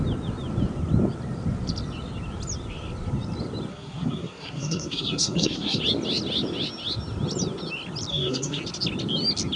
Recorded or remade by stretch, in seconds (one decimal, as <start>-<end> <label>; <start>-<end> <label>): 0.0-3.7 recorded; 3.7-5.8 remade; 5.8-8.1 recorded; 8.1-8.6 remade; 8.6-9.6 recorded